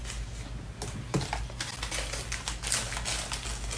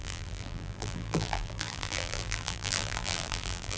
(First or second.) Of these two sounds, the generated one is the second